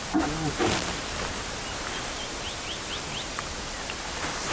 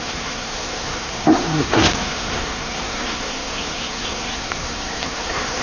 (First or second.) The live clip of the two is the first